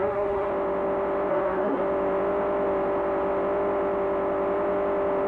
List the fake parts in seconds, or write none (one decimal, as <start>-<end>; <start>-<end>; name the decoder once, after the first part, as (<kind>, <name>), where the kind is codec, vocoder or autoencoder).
0.0-0.5 (codec, SNAC); 1.3-1.8